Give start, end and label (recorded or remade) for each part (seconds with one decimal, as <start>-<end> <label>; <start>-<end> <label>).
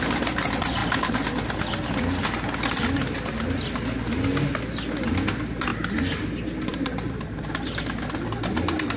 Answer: 0.0-6.7 recorded; 6.7-7.7 remade; 7.7-9.0 recorded